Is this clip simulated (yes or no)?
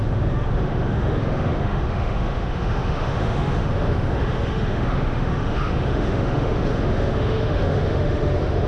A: yes